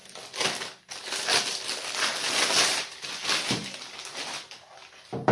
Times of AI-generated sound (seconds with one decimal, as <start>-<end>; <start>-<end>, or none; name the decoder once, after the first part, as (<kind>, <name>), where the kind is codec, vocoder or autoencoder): none